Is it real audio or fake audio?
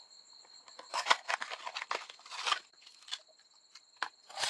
real